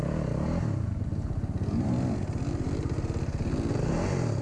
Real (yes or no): yes